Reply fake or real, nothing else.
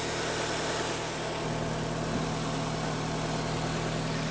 real